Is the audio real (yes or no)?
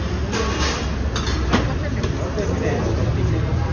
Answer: yes